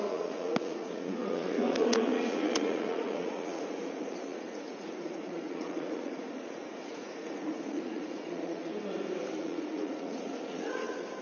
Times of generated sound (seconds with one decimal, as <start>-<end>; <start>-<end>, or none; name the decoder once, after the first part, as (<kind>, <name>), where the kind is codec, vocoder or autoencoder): 0.0-8.7 (vocoder, Vocos); 9.4-11.2